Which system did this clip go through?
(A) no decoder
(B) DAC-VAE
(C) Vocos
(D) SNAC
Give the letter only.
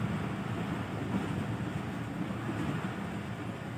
A